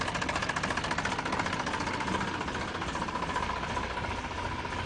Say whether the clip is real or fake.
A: real